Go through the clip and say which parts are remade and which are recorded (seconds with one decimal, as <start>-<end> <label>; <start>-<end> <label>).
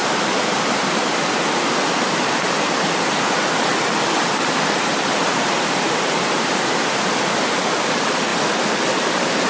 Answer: 0.0-3.7 remade; 3.7-5.2 recorded; 5.2-8.3 remade; 8.3-8.9 recorded; 8.9-9.5 remade